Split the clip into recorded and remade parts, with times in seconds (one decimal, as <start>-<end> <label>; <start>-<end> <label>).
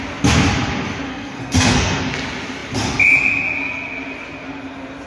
0.0-1.1 recorded; 1.1-2.0 remade; 2.0-5.1 recorded